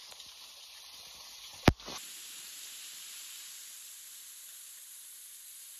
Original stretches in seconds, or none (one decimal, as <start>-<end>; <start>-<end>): 0.0-5.8